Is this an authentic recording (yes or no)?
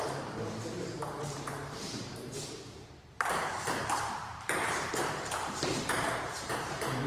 no